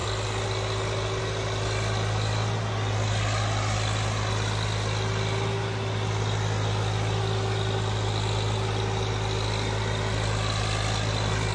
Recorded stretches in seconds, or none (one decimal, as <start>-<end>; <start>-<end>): 0.0-11.5